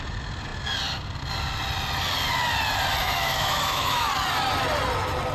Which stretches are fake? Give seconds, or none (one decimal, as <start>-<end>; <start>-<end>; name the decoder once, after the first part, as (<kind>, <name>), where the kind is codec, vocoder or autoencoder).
3.0-4.1 (autoencoder, DAC-VAE)